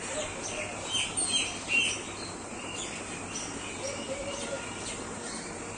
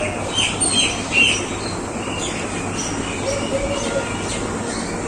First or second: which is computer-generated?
first